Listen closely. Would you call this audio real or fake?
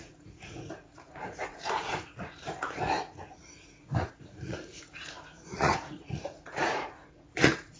fake